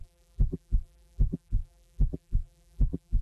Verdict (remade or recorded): remade